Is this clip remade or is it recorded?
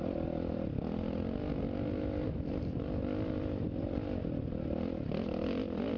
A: recorded